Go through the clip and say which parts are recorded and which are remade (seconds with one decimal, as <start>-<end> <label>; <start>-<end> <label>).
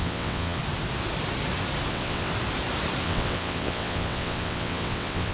0.0-0.6 remade; 0.6-1.9 recorded; 1.9-2.3 remade; 2.3-3.0 recorded; 3.0-5.3 remade